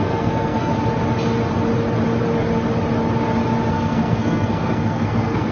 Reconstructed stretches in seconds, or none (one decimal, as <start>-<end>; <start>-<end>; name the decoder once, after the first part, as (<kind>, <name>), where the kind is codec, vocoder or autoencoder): 0.0-0.7 (codec, SNAC); 3.7-5.5